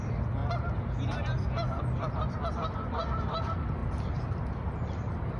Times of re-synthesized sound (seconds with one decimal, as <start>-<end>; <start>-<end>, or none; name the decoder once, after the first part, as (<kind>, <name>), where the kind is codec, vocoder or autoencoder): 0.0-0.4 (vocoder, BigVGAN v2); 1.5-3.8; 4.7-5.4